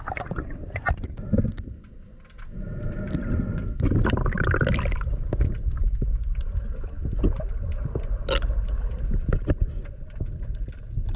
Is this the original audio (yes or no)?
yes